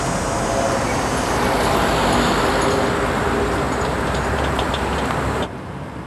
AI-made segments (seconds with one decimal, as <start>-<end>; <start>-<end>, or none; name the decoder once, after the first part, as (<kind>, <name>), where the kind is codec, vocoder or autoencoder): 3.9-4.7 (vocoder, BigVGAN v2)